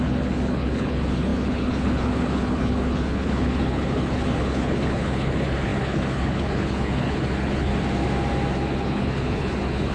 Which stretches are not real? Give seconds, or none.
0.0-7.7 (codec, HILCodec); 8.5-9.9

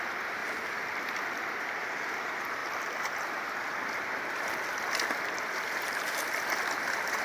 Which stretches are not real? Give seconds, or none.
0.4-1.1 (vocoder, BigVGAN v2); 2.6-7.2

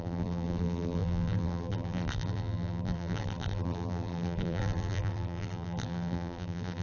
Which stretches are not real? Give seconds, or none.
0.0-6.8 (vocoder, BigVGAN v2)

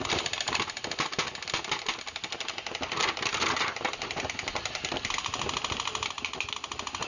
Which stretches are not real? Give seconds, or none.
none

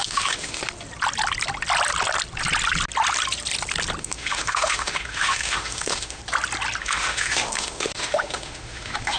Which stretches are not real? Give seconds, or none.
0.0-0.6 (autoencoder, DAC-VAE); 4.0-6.2; 6.8-9.2